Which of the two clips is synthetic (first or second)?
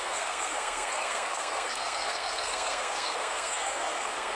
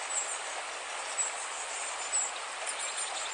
first